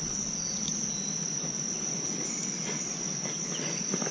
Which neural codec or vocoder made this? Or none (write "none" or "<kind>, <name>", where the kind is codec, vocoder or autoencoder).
none